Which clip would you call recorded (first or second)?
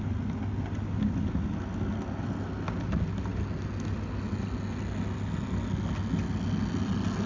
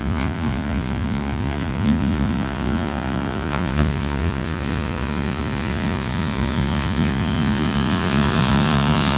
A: first